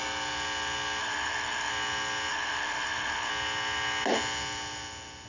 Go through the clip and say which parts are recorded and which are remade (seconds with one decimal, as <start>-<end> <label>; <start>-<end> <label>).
0.0-1.0 recorded; 1.0-1.7 remade; 1.7-2.3 recorded; 2.3-3.3 remade; 3.3-5.3 recorded